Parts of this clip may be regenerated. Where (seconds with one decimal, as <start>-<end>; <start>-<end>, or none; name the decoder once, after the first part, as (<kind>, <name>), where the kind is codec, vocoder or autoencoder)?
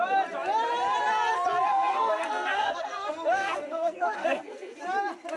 1.7-4.8 (codec, SNAC)